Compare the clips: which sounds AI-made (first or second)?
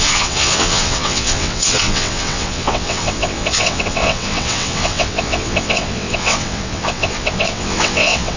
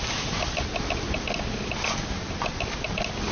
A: first